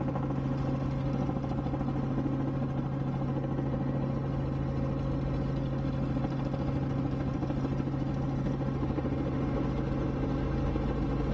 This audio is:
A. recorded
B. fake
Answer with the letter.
A